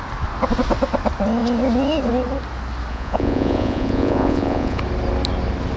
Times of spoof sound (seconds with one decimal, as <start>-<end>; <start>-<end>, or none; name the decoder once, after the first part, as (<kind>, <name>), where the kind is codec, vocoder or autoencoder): 2.9-4.8 (vocoder, Vocos)